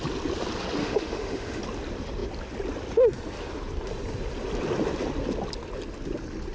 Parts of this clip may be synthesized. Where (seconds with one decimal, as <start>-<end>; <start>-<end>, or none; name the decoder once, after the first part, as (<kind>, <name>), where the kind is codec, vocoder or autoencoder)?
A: 0.8-1.6 (autoencoder, DAC-VAE)